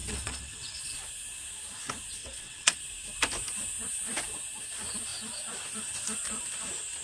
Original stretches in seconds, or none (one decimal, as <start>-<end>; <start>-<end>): 0.8-2.2; 2.8-7.0